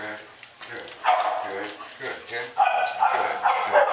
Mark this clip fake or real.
real